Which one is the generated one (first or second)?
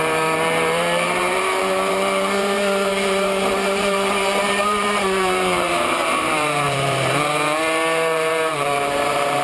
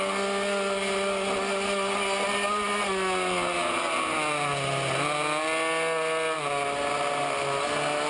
first